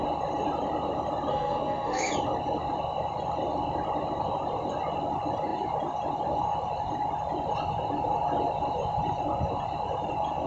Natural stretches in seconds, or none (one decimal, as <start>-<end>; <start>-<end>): 0.0-1.3; 2.1-10.5